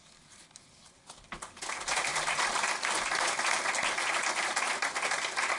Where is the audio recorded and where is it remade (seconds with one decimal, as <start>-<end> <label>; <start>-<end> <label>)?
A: 0.0-5.6 recorded